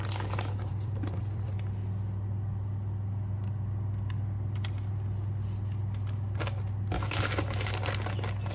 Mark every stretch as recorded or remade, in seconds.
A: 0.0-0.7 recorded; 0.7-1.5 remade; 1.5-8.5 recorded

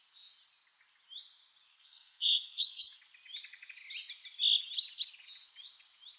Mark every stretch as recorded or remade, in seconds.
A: 0.0-1.7 recorded; 1.7-3.0 remade; 3.0-6.2 recorded

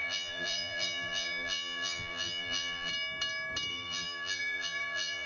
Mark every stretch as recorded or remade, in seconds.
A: 0.0-2.9 remade; 2.9-3.7 recorded; 3.7-5.3 remade

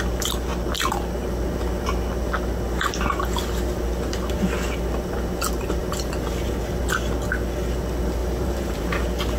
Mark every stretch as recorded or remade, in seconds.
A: 0.0-5.8 recorded; 5.8-6.8 remade; 6.8-8.2 recorded; 8.2-9.0 remade; 9.0-9.4 recorded